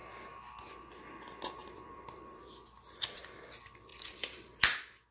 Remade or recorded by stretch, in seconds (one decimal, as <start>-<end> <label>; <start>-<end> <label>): 0.0-1.6 recorded; 1.6-2.5 remade; 2.5-3.9 recorded; 3.9-4.6 remade; 4.6-5.1 recorded